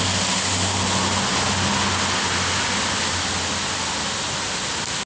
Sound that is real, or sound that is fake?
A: real